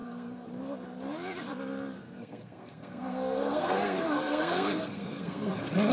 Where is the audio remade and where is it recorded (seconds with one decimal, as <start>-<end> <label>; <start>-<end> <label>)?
0.0-0.5 remade; 0.5-2.0 recorded; 2.0-5.5 remade; 5.5-5.9 recorded